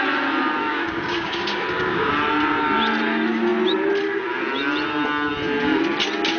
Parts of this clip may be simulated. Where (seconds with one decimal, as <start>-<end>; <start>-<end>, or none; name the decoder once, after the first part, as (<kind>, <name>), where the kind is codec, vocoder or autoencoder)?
0.6-2.1 (codec, DAC)